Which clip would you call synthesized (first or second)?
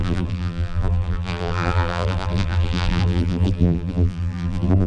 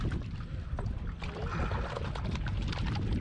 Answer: first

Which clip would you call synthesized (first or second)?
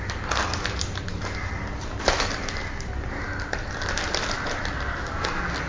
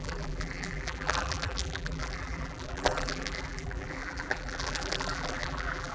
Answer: second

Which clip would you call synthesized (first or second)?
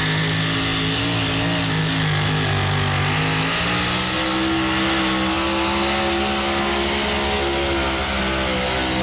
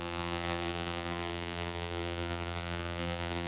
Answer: second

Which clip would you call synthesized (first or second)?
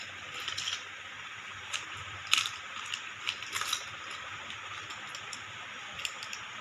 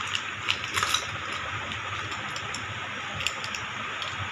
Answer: first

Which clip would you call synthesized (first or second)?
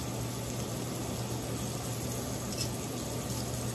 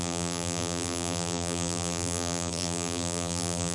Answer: second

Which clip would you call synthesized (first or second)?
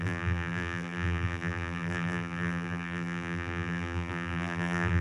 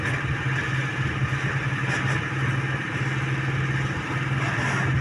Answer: first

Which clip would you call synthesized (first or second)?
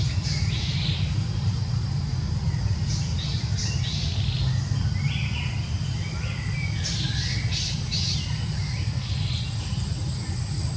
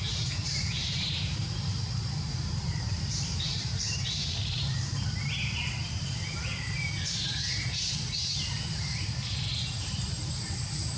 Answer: second